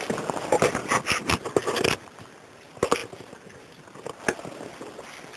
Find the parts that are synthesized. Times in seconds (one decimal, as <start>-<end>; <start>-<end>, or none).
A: none